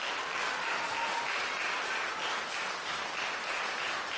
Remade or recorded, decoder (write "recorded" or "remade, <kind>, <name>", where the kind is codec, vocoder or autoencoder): recorded